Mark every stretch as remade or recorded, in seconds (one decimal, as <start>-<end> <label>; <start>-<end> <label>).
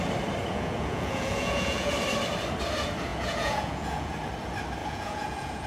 0.0-0.4 recorded; 0.4-1.9 remade; 1.9-3.1 recorded; 3.1-4.1 remade; 4.1-4.8 recorded; 4.8-5.7 remade